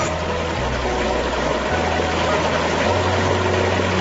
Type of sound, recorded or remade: recorded